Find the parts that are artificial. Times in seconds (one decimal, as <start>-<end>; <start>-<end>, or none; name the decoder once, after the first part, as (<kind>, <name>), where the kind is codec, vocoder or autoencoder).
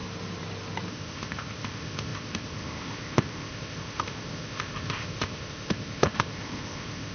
0.9-7.1 (codec, ZipCodec)